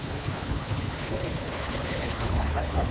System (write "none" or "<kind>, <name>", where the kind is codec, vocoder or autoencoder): codec, HILCodec